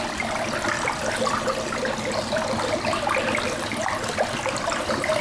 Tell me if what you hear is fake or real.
real